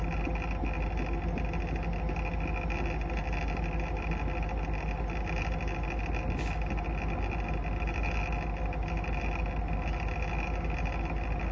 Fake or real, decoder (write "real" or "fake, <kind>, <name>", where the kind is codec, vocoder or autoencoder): real